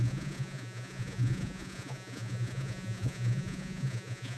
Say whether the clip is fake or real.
fake